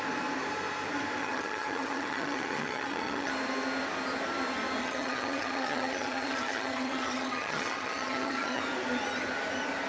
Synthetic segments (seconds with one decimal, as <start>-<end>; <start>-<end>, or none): 1.2-3.3; 4.8-8.6